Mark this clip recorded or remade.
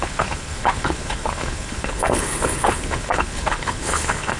remade